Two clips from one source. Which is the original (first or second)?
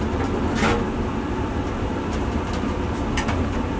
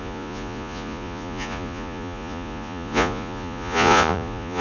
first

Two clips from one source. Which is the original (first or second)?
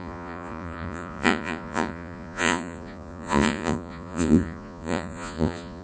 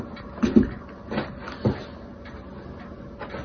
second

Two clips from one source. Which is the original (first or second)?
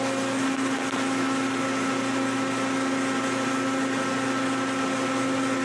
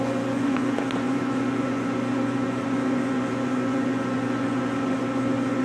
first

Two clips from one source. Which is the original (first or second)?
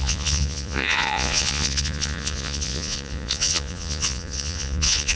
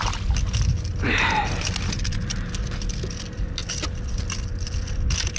second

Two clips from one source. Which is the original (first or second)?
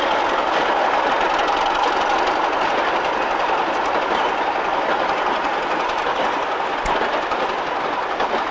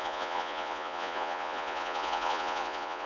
first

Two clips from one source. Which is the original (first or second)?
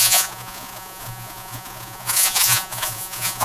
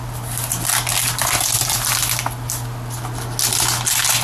second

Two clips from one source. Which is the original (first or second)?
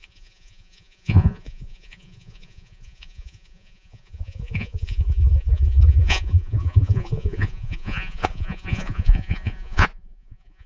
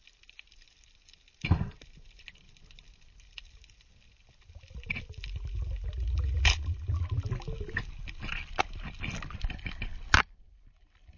second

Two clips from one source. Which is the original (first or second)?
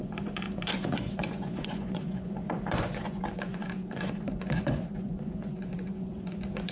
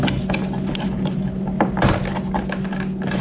second